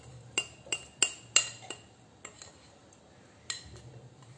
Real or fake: real